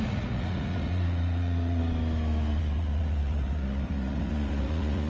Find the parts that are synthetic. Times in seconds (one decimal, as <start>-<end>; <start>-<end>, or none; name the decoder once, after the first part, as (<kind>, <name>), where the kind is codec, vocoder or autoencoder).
0.0-1.8 (vocoder, Vocos); 2.6-5.1